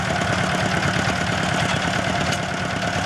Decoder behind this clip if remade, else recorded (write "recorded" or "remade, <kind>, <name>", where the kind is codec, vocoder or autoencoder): recorded